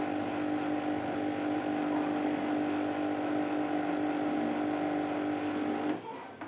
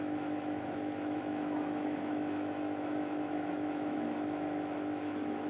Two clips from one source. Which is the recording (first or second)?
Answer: first